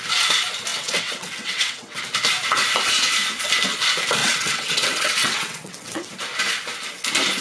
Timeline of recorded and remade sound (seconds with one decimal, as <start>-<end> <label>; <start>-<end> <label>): 0.0-0.7 recorded; 0.7-2.0 remade; 2.0-4.2 recorded; 4.2-6.1 remade; 6.1-7.4 recorded